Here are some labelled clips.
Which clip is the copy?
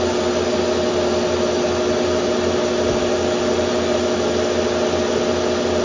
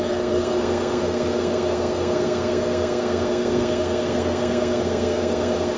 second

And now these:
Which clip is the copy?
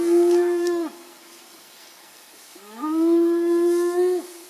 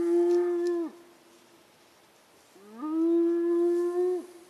first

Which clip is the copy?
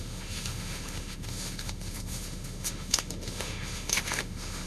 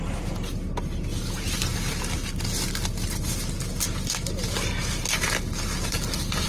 first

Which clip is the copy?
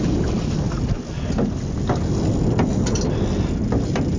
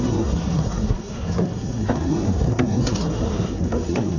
second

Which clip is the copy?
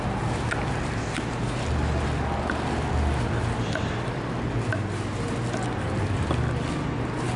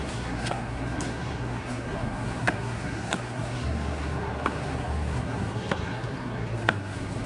second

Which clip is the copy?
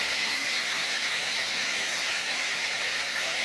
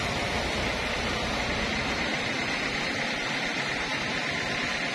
first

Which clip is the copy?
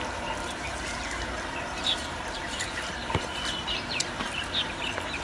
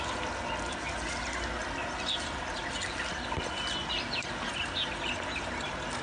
first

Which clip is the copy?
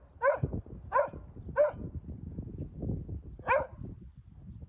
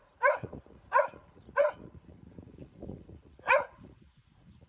second